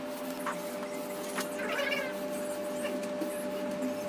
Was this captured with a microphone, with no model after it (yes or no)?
yes